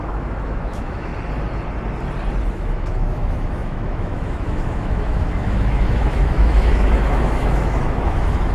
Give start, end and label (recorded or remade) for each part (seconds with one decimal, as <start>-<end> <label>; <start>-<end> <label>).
0.0-1.1 remade; 1.1-2.5 recorded; 2.5-8.5 remade